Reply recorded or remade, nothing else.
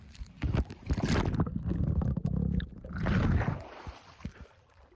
recorded